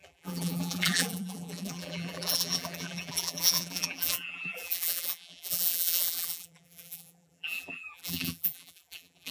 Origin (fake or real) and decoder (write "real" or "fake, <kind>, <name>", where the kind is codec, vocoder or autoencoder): fake, vocoder, BigVGAN v2